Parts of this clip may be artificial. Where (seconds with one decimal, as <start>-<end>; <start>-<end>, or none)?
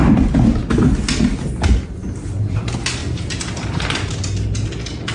2.0-2.6; 3.0-4.1